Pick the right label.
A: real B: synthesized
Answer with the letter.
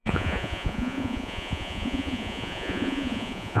B